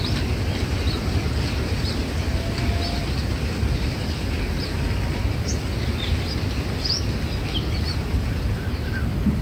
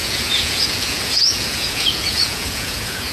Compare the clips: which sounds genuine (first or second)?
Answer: first